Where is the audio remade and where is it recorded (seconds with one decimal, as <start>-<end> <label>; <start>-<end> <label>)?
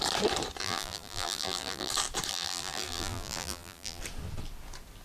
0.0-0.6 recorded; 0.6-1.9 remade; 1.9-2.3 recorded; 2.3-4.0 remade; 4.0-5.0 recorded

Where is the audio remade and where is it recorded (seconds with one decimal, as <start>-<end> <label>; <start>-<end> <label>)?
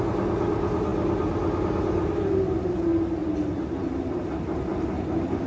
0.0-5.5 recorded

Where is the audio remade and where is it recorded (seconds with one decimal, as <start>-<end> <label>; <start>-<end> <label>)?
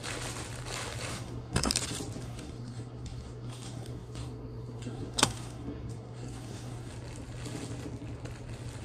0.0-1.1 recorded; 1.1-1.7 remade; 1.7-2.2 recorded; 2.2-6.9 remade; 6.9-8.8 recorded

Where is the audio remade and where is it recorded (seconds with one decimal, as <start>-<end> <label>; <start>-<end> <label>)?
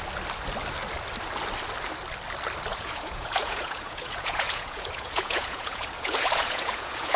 0.0-2.7 recorded; 2.7-7.2 remade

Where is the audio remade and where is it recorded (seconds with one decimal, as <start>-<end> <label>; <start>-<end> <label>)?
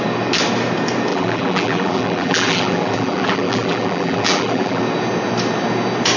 0.0-1.1 recorded; 1.1-4.8 remade; 4.8-6.2 recorded